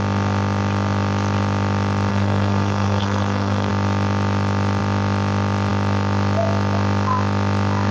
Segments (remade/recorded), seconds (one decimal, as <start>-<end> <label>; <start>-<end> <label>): 0.0-2.1 recorded; 2.1-3.7 remade; 3.7-7.9 recorded